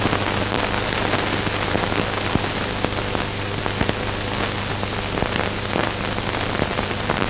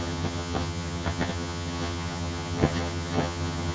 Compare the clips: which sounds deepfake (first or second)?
second